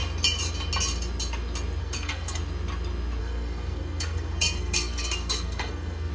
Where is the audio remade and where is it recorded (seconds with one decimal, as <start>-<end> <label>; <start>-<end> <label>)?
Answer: 0.0-1.8 recorded; 1.8-2.4 remade; 2.4-3.2 recorded; 3.2-6.1 remade